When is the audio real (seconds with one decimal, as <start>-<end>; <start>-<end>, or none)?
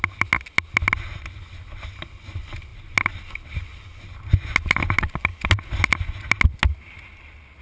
0.0-7.6